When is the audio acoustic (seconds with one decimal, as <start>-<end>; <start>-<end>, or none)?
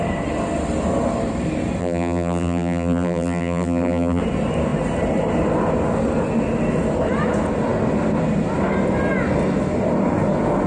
0.0-1.8; 4.2-10.7